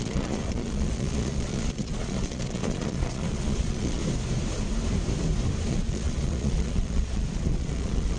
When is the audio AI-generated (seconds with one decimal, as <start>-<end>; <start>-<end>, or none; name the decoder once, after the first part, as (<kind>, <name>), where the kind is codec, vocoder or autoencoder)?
0.0-4.0 (vocoder, Vocos); 5.7-8.2